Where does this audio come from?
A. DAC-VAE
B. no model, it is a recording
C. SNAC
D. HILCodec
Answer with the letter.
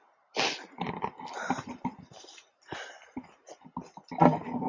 B